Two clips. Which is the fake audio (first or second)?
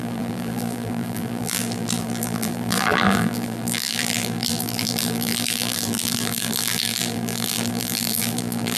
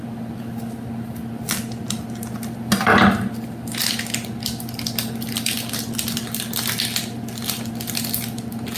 first